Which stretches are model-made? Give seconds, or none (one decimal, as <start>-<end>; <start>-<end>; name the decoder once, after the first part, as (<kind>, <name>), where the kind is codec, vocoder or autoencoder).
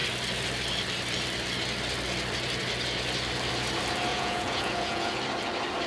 4.1-5.2 (vocoder, Vocos)